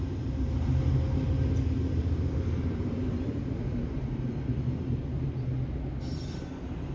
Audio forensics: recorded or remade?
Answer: recorded